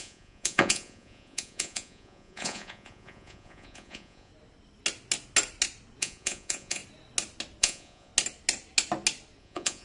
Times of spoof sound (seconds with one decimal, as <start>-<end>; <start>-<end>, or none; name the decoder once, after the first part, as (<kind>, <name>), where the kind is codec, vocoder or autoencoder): 0.0-4.3 (vocoder, Vocos); 6.0-6.8; 7.6-8.1; 9.4-9.8